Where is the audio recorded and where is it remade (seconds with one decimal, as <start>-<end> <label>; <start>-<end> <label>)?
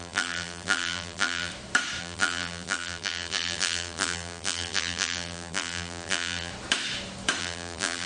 0.0-1.5 remade; 1.5-2.0 recorded; 2.0-6.5 remade; 6.5-7.4 recorded; 7.4-8.1 remade